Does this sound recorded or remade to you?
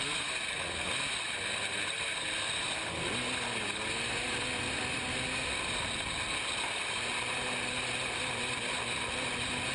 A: recorded